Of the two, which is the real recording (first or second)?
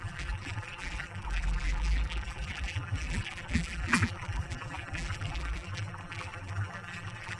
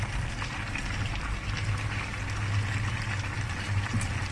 second